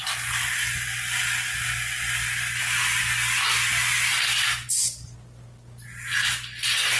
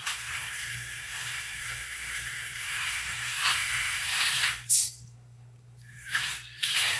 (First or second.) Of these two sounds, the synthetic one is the second